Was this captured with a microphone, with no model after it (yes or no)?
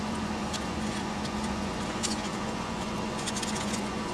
no